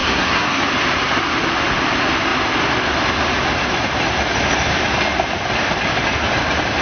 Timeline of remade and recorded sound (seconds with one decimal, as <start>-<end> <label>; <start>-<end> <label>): 0.0-0.6 remade; 0.6-6.8 recorded